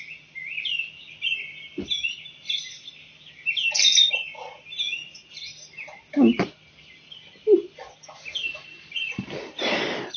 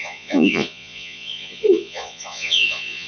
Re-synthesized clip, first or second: second